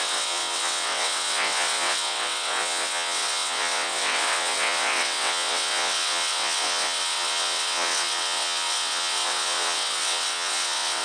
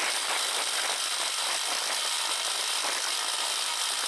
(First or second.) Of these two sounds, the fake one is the first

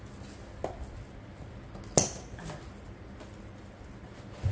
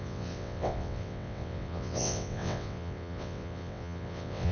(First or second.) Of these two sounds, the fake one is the second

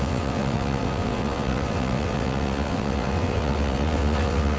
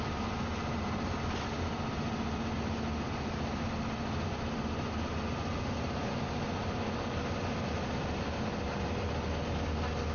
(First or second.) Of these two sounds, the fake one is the first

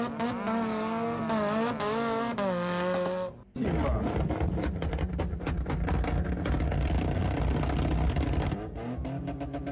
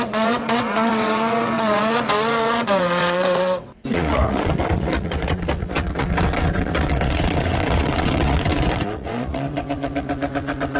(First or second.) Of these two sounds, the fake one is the second